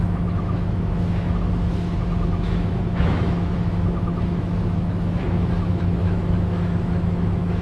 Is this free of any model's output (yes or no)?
no